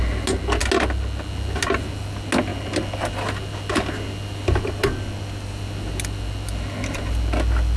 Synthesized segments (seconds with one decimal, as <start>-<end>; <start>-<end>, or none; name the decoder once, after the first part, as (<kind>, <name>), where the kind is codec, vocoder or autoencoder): none